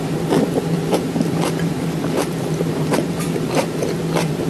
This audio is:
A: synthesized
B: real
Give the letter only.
A